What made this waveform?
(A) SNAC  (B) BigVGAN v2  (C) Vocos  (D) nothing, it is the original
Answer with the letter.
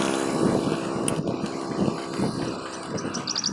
D